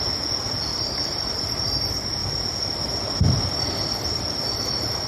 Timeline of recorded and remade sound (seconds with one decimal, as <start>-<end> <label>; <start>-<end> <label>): 0.0-0.7 recorded; 0.7-1.8 remade; 1.8-5.1 recorded

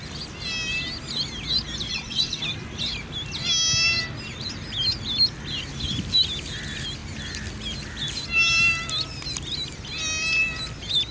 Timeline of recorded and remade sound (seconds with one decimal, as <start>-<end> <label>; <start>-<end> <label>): 0.0-1.9 recorded; 1.9-2.4 remade; 2.4-11.1 recorded

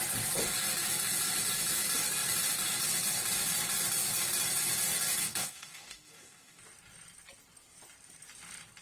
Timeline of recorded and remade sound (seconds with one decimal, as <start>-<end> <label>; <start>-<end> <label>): 0.0-5.2 recorded; 5.2-6.6 remade; 6.6-8.8 recorded

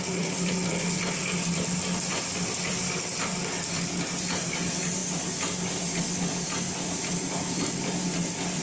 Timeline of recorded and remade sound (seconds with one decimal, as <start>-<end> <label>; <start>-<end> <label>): 0.0-8.6 recorded

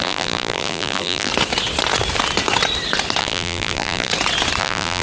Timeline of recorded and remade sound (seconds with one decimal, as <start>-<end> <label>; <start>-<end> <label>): 0.0-1.3 remade; 1.3-3.2 recorded; 3.2-4.1 remade; 4.1-4.6 recorded; 4.6-5.0 remade

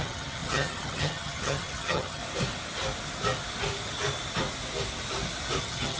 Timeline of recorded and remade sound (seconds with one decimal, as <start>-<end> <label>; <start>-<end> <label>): 0.0-2.2 remade; 2.2-5.6 recorded; 5.6-6.0 remade